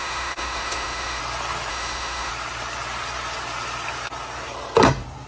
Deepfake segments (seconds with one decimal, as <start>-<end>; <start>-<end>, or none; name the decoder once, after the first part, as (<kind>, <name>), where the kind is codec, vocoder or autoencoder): 0.0-1.2 (autoencoder, DAC-VAE); 1.7-2.3